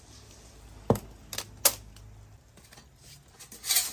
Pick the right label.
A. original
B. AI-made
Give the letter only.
A